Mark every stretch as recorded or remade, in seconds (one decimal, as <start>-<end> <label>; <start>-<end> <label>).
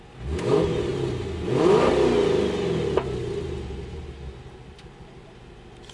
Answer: 0.0-5.9 recorded